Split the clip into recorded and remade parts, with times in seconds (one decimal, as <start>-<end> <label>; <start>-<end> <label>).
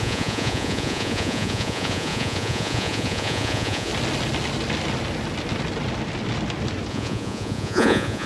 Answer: 0.0-3.9 remade; 3.9-6.9 recorded; 6.9-8.3 remade